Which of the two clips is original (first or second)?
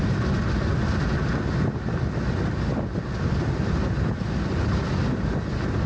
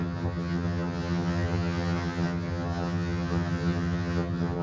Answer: first